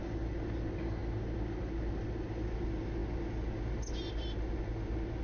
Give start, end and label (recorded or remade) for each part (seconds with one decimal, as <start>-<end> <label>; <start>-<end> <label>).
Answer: 0.0-5.2 recorded